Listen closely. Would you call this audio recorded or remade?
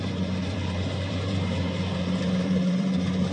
remade